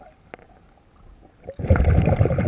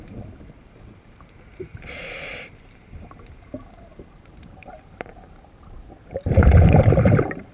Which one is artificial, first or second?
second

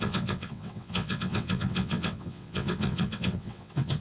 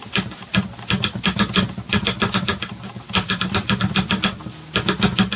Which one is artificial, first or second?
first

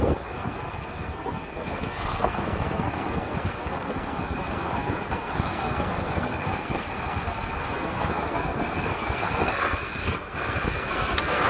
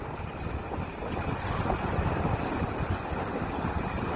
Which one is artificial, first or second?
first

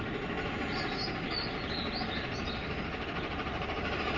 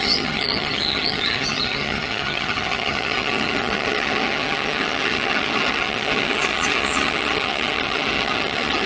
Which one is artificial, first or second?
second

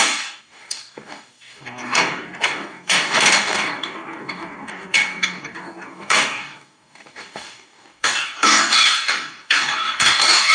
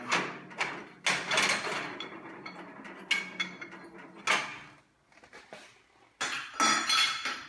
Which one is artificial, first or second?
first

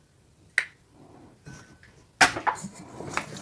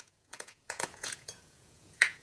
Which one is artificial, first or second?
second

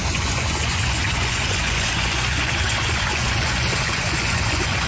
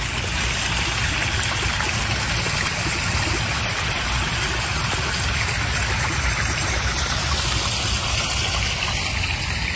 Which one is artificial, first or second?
first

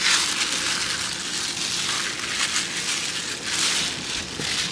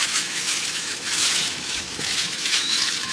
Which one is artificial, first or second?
second